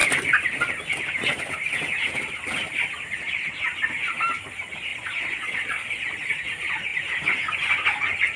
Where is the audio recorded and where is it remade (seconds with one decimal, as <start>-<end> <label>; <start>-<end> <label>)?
0.0-4.9 recorded; 4.9-6.5 remade; 6.5-8.4 recorded